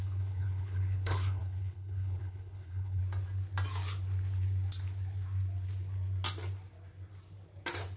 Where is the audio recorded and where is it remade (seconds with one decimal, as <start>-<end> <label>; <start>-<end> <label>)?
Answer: 0.0-3.0 remade; 3.0-8.0 recorded